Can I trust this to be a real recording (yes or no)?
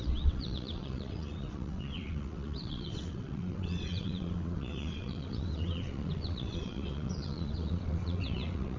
no